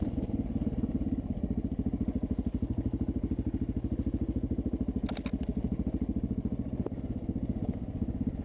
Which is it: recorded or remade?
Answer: recorded